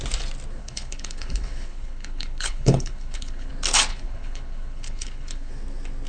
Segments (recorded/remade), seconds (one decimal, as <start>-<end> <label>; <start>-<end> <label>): 0.0-0.6 recorded; 0.6-3.5 remade; 3.5-3.9 recorded; 3.9-5.5 remade; 5.5-6.1 recorded